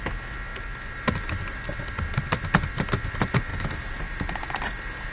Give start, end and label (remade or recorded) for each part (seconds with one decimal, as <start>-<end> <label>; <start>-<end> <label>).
0.0-3.5 recorded; 3.5-4.6 remade; 4.6-5.1 recorded